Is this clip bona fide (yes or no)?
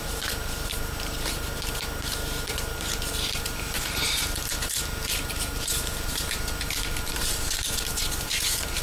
no